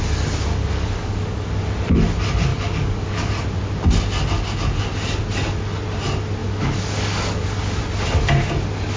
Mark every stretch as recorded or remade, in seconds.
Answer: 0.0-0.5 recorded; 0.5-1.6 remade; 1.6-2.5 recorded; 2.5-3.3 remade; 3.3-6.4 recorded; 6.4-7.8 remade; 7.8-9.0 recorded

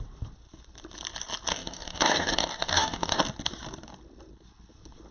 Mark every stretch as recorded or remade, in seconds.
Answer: 0.0-1.5 recorded; 1.5-3.2 remade; 3.2-5.1 recorded

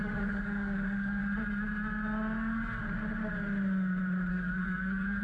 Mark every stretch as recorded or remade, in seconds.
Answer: 0.0-1.2 remade; 1.2-4.3 recorded; 4.3-5.2 remade

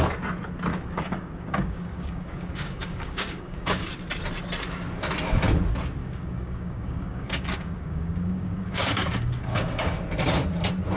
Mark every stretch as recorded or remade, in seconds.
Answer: 0.0-0.7 recorded; 0.7-3.9 remade; 3.9-6.0 recorded; 6.0-10.0 remade; 10.0-11.0 recorded

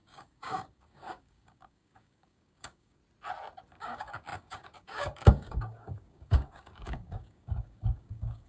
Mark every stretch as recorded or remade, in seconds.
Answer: 0.0-3.0 remade; 3.0-3.7 recorded; 3.7-8.5 remade

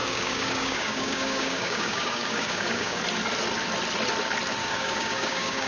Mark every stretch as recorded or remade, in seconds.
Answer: 0.0-3.0 remade; 3.0-4.6 recorded; 4.6-5.7 remade

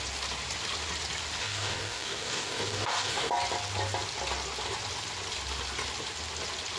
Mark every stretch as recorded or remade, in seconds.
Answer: 0.0-1.4 recorded; 1.4-3.3 remade; 3.3-6.8 recorded

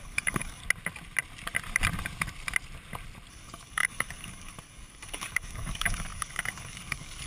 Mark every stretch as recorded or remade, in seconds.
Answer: 0.0-0.6 remade; 0.6-3.3 recorded; 3.3-7.3 remade